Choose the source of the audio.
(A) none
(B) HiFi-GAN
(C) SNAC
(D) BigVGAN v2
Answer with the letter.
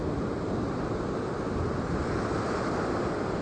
A